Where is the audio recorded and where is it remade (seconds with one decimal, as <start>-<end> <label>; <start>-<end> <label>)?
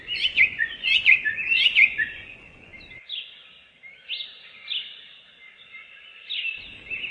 0.0-2.7 remade; 2.7-7.1 recorded